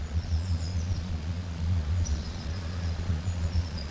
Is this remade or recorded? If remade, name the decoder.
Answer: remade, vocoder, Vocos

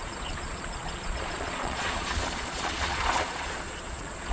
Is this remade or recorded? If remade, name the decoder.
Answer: remade, vocoder, Vocos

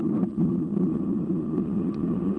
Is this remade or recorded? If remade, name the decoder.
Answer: remade, vocoder, Vocos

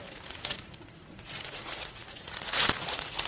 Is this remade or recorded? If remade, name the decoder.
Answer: remade, vocoder, Vocos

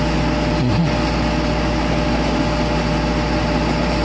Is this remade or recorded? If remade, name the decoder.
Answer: recorded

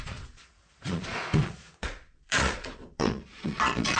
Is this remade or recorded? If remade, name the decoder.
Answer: remade, vocoder, Vocos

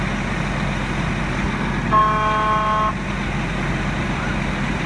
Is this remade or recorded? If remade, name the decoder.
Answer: recorded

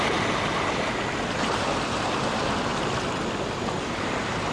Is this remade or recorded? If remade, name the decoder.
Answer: recorded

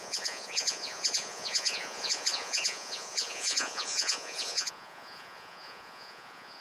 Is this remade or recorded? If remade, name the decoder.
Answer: remade, vocoder, Vocos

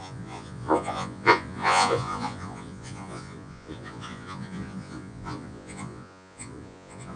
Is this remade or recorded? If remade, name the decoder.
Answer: remade, vocoder, Vocos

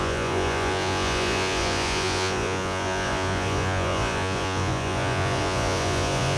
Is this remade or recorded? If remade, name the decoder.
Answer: remade, vocoder, Vocos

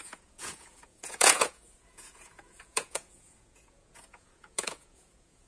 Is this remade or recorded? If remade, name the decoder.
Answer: remade, vocoder, Vocos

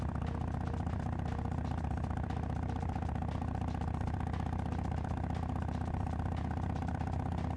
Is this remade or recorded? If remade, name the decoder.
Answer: recorded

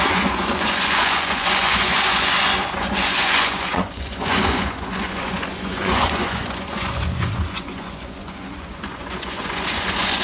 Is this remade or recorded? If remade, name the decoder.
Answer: remade, vocoder, Vocos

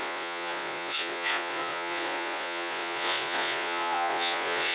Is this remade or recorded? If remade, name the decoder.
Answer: remade, vocoder, Vocos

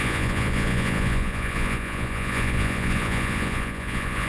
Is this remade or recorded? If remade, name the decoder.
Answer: remade, vocoder, Vocos